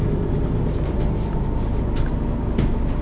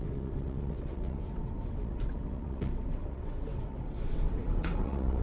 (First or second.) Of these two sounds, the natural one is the first